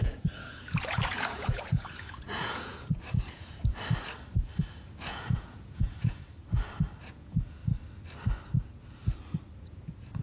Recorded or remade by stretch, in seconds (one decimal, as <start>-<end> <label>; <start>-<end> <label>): 0.0-3.7 remade; 3.7-4.7 recorded; 4.7-6.2 remade; 6.2-7.0 recorded; 7.0-7.6 remade; 7.6-9.6 recorded; 9.6-10.2 remade